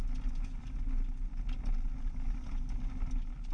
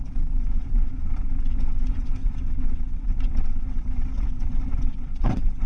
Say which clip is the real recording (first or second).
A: first